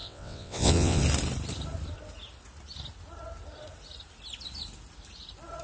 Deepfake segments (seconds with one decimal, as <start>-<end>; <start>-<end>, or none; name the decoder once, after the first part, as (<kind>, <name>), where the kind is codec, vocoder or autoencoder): 0.0-1.0 (vocoder, WaveNeXt)